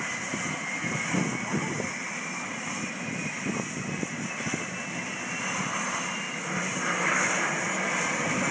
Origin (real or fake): real